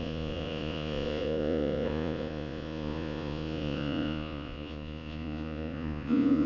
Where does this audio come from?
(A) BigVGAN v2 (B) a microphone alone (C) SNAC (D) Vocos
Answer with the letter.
D